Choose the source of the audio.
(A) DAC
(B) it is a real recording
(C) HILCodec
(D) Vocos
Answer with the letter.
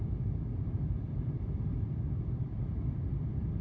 B